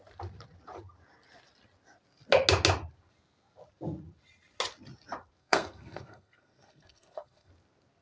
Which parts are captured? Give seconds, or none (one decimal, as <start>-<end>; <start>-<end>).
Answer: 0.0-5.4; 7.5-8.0